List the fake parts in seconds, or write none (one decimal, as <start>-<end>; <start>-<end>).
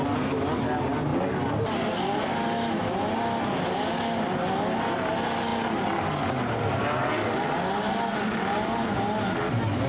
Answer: none